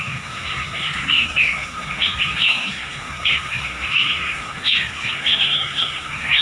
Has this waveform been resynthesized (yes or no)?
yes